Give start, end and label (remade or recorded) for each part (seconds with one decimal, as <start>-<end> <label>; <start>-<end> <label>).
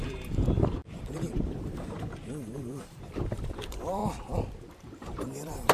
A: 0.0-4.0 remade; 4.0-4.7 recorded; 4.7-5.7 remade